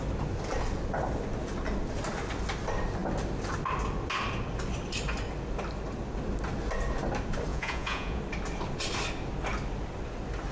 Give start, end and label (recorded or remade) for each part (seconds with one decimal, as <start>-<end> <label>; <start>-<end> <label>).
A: 0.0-7.5 recorded; 7.5-8.2 remade; 8.2-10.5 recorded

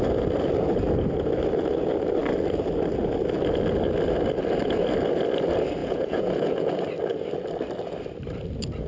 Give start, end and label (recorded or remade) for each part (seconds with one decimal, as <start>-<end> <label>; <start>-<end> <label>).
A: 0.0-5.8 recorded; 5.8-6.7 remade; 6.7-8.9 recorded

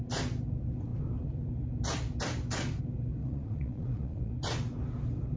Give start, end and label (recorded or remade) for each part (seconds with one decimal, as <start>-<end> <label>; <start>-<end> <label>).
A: 0.0-3.2 recorded; 3.2-4.3 remade; 4.3-5.4 recorded

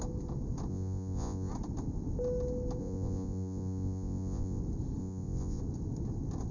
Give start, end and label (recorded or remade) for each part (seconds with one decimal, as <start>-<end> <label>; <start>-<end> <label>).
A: 0.0-0.7 recorded; 0.7-1.5 remade; 1.5-2.8 recorded; 2.8-4.6 remade; 4.6-5.0 recorded; 5.0-5.6 remade; 5.6-6.5 recorded